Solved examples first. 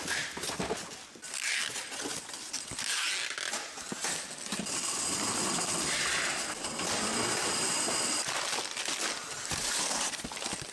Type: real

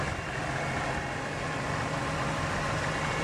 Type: real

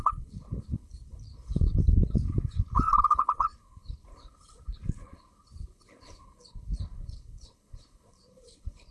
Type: fake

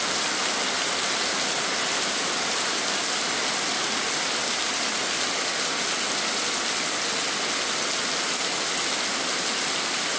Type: real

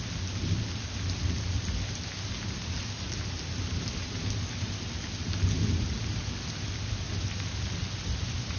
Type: real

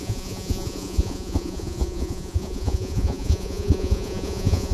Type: fake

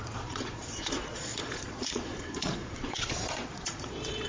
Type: fake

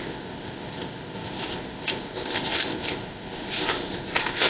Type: fake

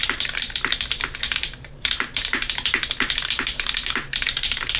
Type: fake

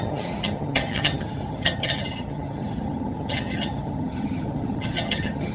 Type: fake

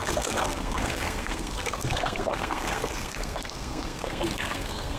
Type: fake